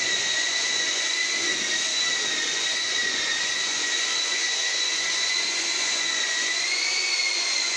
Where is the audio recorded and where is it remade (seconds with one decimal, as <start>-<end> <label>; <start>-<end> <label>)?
0.0-1.5 remade; 1.5-2.4 recorded; 2.4-7.8 remade